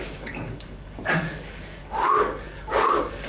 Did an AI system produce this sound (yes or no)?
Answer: yes